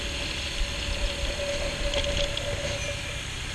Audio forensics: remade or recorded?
recorded